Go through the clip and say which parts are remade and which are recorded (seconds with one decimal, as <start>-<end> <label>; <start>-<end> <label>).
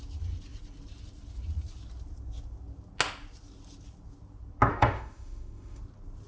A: 0.0-4.7 recorded; 4.7-5.8 remade; 5.8-6.3 recorded